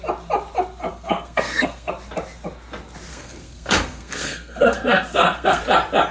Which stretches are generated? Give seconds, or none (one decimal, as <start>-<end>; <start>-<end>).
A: 0.9-1.9; 3.1-5.6